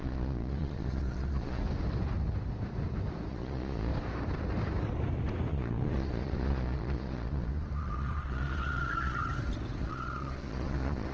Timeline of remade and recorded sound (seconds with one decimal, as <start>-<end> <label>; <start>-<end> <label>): 0.0-1.6 remade; 1.6-3.3 recorded; 3.3-3.9 remade; 3.9-5.5 recorded; 5.5-9.2 remade; 9.2-9.8 recorded; 9.8-11.1 remade